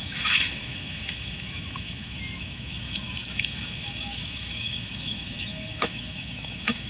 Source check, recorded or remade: remade